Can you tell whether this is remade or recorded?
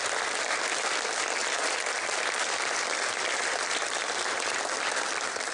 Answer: recorded